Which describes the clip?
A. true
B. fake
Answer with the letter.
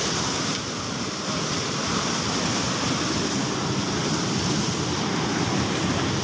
A